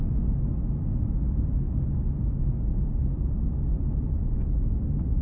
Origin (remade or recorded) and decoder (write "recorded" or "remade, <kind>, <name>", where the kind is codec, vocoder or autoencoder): recorded